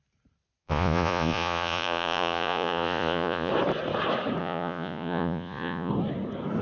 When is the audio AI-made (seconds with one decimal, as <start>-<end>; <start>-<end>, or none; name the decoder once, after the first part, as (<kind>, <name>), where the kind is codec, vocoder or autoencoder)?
0.6-3.5 (vocoder, Vocos); 4.4-5.9